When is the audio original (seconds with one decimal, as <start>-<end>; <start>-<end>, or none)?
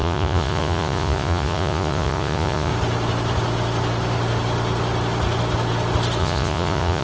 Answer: 2.7-6.2